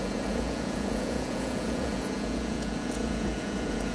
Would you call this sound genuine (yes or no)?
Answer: no